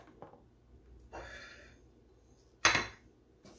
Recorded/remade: recorded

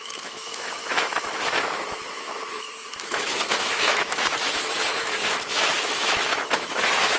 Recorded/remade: remade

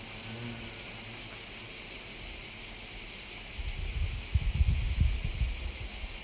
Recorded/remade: recorded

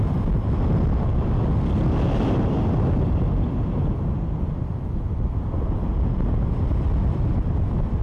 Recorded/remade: recorded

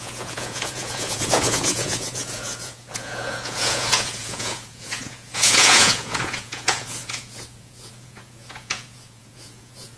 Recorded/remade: remade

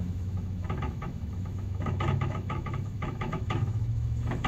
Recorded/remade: remade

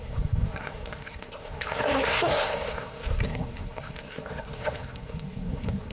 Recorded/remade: remade